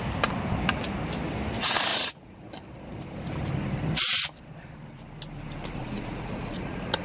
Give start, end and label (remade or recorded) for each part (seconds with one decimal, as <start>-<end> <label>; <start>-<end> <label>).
0.0-1.9 recorded; 1.9-2.5 remade; 2.5-5.7 recorded; 5.7-7.0 remade